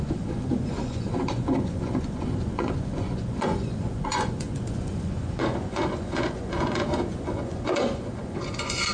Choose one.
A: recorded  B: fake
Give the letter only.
B